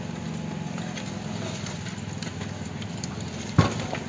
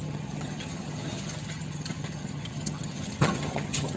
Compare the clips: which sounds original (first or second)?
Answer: first